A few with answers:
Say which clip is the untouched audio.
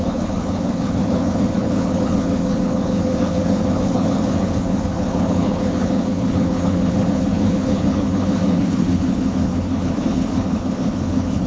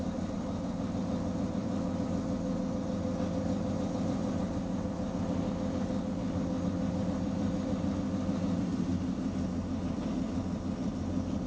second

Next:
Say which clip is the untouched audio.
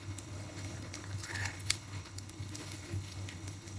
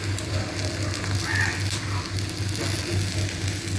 second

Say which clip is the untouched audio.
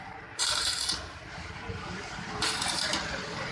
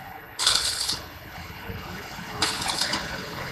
first